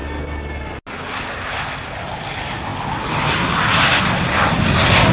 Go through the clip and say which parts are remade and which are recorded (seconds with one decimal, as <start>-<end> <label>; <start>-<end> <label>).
0.0-5.1 recorded